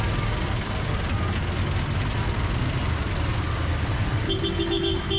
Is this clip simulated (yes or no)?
no